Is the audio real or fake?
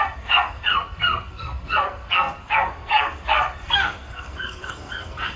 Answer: fake